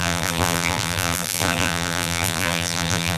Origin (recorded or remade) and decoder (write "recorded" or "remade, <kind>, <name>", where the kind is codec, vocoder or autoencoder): remade, vocoder, BigVGAN v2